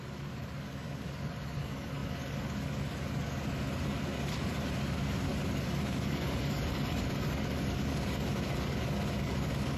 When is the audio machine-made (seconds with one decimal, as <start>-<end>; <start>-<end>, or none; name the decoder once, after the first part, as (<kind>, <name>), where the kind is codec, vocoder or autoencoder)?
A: 0.0-9.8 (codec, DAC)